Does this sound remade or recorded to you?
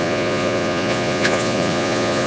remade